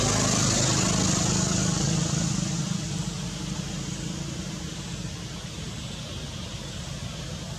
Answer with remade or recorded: recorded